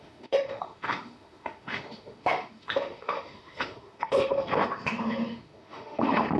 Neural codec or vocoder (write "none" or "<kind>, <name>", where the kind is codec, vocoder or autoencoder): autoencoder, DAC-VAE